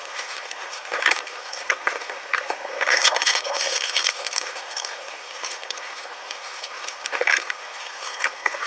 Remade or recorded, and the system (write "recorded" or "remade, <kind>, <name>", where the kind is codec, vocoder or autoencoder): remade, codec, SNAC